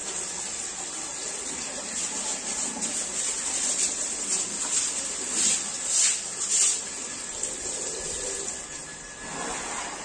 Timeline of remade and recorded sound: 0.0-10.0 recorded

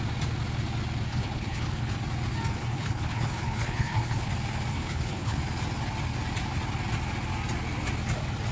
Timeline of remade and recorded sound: 0.0-1.1 recorded; 1.1-1.9 remade; 1.9-2.6 recorded; 2.6-4.3 remade; 4.3-4.7 recorded; 4.7-5.4 remade; 5.4-8.5 recorded

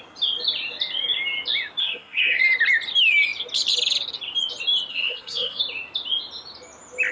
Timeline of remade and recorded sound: 0.0-1.8 recorded; 1.8-2.4 remade; 2.4-4.9 recorded; 4.9-5.6 remade; 5.6-7.1 recorded